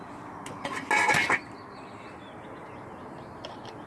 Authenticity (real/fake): real